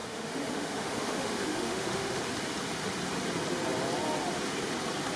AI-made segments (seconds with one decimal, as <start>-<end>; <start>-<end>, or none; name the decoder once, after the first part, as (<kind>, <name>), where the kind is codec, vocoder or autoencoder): 0.0-2.2 (autoencoder, DAC-VAE)